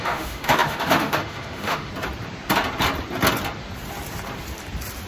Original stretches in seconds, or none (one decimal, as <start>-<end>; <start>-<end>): 1.9-5.1